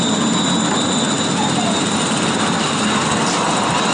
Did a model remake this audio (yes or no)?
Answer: no